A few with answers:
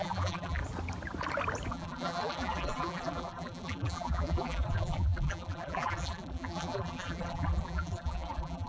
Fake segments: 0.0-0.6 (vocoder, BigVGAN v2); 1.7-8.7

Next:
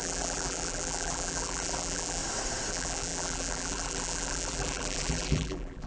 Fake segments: 0.0-2.2 (vocoder, BigVGAN v2); 2.7-5.9

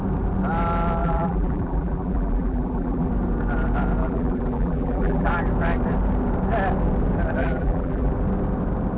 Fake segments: 1.0-3.1 (vocoder, BigVGAN v2); 4.0-5.3; 7.4-8.1

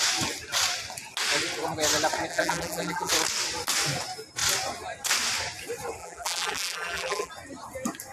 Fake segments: 2.3-3.1 (vocoder, BigVGAN v2); 6.0-7.3

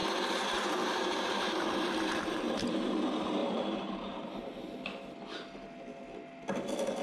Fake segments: 0.0-1.9 (vocoder, BigVGAN v2); 3.4-4.7

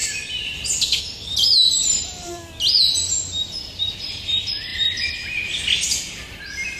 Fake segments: 0.0-1.0 (vocoder, BigVGAN v2); 1.6-2.5; 4.7-5.5